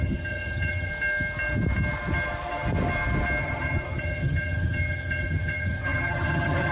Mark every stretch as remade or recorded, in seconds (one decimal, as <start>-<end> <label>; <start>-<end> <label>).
0.0-0.9 remade; 0.9-3.4 recorded; 3.4-6.7 remade